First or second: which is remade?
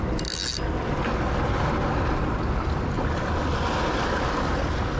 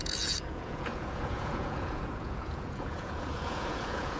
second